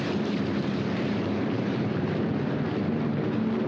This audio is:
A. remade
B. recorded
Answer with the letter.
A